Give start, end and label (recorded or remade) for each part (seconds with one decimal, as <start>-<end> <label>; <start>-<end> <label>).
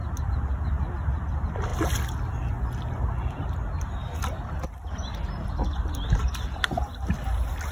0.0-5.7 recorded; 5.7-6.3 remade; 6.3-7.7 recorded